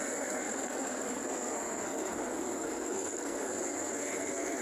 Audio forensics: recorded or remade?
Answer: remade